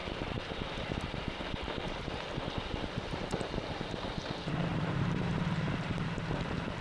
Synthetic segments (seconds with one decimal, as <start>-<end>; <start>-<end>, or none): 0.0-6.8